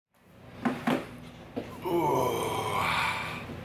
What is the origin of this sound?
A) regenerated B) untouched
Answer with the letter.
B